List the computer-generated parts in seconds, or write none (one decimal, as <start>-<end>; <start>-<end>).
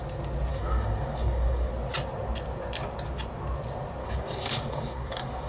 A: 0.5-1.7; 4.0-5.5